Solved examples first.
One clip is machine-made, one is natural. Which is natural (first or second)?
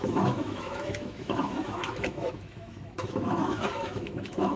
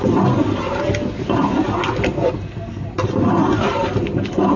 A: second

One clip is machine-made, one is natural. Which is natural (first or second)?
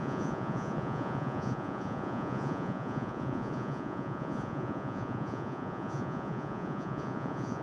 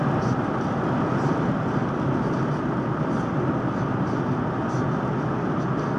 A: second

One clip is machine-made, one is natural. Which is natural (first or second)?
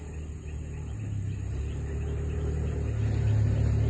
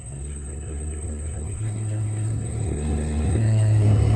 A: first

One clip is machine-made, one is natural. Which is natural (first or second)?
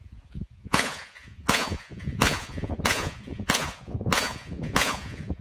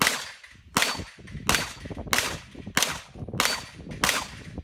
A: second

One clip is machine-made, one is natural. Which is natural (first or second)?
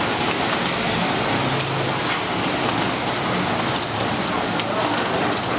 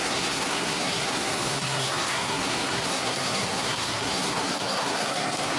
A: first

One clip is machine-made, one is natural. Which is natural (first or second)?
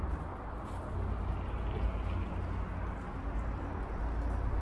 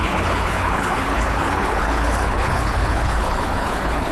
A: first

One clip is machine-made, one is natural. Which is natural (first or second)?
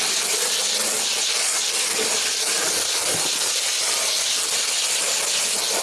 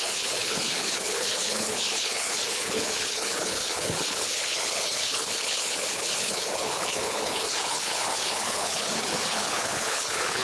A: first